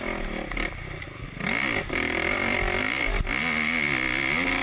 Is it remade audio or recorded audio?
recorded